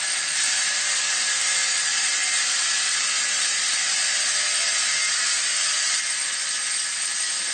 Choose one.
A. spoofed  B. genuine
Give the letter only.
B